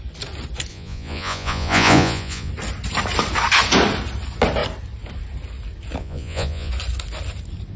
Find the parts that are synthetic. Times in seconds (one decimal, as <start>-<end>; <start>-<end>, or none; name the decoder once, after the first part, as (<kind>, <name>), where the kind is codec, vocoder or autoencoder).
0.7-2.5 (vocoder, Vocos); 6.0-6.7

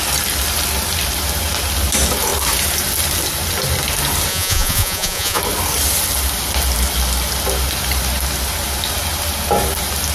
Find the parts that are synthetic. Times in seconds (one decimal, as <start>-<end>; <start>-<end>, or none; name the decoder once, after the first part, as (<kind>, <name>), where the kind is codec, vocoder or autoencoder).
4.3-5.4 (vocoder, Vocos)

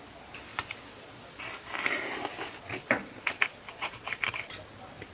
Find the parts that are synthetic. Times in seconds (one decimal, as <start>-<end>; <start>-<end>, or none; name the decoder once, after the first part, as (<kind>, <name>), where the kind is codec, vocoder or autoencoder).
0.5-1.1 (vocoder, BigVGAN v2); 2.3-5.1